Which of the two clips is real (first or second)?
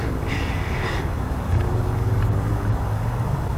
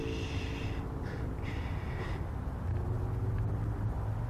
second